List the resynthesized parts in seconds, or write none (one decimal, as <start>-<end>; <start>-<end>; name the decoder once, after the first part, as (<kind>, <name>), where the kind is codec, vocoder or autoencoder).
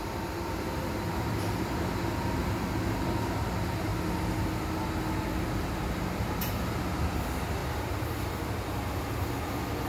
7.6-9.5 (vocoder, BigVGAN v2)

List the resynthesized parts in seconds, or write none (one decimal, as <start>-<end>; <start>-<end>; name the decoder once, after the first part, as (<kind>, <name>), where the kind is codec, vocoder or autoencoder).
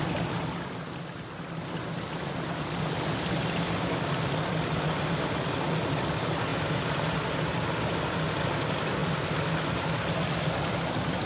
none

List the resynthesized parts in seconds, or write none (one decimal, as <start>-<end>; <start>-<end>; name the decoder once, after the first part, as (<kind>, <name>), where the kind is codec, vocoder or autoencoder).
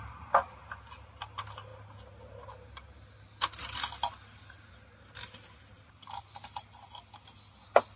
none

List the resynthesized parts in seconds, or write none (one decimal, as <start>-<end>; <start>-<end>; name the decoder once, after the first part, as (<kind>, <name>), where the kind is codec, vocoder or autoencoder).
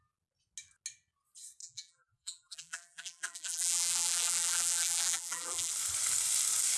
1.6-5.7 (vocoder, BigVGAN v2)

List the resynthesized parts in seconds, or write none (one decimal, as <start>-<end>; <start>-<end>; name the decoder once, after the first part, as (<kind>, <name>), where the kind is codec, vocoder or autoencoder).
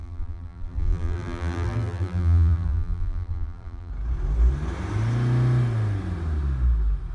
0.0-3.9 (vocoder, BigVGAN v2)